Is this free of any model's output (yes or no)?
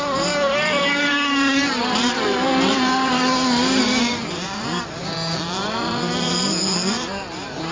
no